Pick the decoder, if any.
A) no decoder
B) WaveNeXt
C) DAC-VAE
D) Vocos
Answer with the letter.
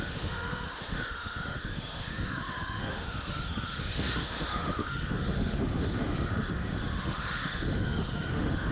C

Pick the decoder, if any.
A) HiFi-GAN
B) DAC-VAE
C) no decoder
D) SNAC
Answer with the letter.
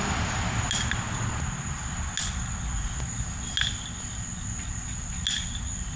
C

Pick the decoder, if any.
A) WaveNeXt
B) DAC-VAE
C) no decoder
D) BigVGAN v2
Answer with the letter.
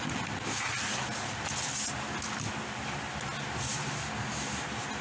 C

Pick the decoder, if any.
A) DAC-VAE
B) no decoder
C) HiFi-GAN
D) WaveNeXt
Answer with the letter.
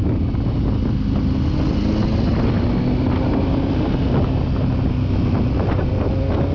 B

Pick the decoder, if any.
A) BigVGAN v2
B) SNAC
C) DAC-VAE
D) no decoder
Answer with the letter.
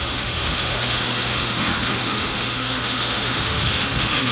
C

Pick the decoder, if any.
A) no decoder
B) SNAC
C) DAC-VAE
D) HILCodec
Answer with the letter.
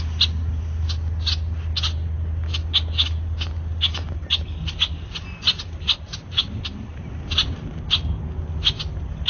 A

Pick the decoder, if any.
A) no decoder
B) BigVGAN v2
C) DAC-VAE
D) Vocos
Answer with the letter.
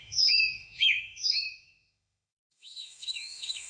C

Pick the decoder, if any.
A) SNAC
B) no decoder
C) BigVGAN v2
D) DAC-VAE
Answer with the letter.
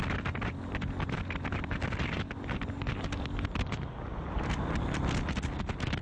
B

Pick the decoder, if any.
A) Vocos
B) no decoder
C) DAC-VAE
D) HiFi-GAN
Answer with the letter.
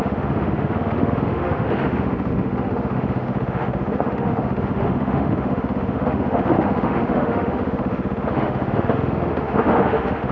C